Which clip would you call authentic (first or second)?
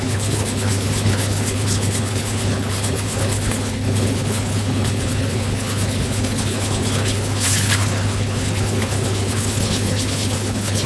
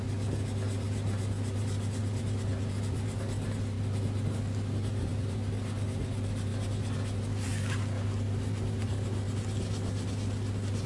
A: second